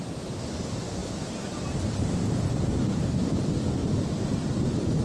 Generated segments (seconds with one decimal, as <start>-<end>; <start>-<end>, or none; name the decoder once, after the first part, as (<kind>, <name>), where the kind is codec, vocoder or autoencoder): 3.8-4.6 (vocoder, BigVGAN v2)